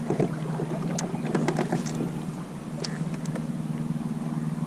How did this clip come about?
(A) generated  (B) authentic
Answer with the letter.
B